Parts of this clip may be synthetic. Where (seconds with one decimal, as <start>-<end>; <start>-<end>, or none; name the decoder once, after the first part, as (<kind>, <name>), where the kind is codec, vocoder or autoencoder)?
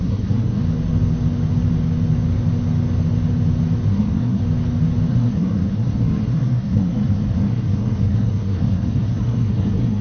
0.0-0.6 (codec, SNAC); 3.9-4.4; 5.1-10.0